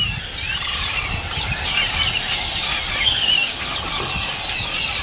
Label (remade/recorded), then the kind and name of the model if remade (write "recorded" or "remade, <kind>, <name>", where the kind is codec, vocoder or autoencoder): recorded